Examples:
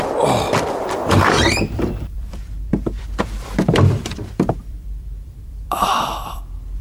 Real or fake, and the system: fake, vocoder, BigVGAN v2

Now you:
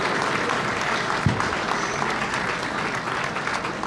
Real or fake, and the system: real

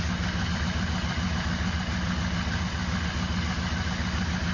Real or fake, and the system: real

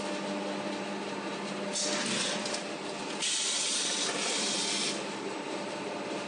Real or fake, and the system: real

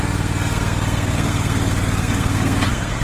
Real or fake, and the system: fake, codec, SNAC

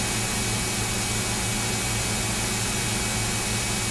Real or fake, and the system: real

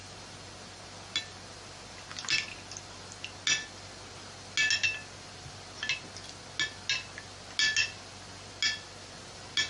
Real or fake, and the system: real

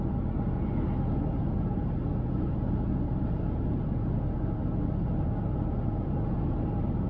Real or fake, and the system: real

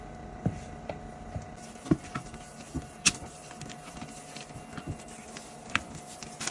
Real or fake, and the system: real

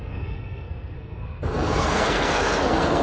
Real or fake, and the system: fake, codec, SNAC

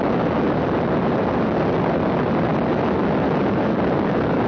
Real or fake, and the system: real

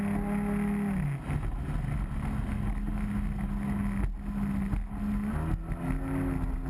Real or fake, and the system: real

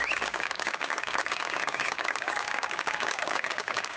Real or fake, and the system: fake, codec, DAC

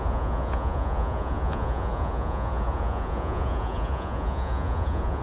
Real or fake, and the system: fake, vocoder, Vocos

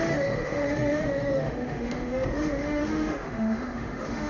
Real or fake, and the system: fake, autoencoder, DAC-VAE